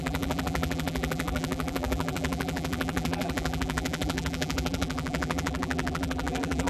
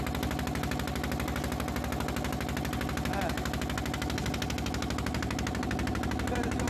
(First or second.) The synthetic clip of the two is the first